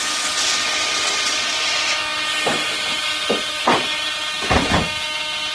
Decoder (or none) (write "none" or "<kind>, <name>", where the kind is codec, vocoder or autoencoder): none